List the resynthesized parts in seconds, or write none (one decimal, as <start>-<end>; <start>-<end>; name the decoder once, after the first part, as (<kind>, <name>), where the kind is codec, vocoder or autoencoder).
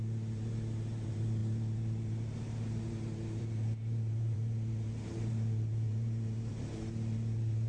0.0-7.7 (vocoder, BigVGAN v2)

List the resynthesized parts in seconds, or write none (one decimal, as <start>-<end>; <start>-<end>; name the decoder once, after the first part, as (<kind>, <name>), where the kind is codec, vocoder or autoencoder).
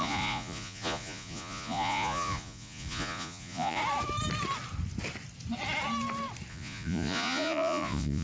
0.0-3.8 (vocoder, Vocos); 6.5-8.2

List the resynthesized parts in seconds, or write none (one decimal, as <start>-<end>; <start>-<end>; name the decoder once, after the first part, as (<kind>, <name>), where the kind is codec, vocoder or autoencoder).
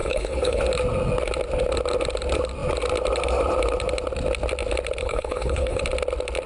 0.0-0.6 (codec, HILCodec); 5.0-5.8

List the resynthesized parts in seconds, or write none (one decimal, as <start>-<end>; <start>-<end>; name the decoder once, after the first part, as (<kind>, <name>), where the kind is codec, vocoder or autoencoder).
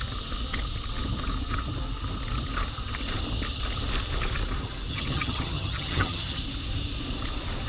4.9-6.4 (vocoder, HiFi-GAN)